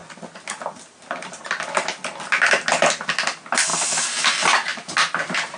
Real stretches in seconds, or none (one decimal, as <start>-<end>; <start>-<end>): 0.0-5.6